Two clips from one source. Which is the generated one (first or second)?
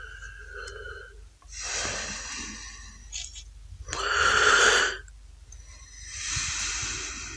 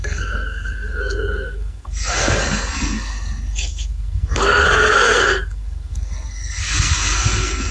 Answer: second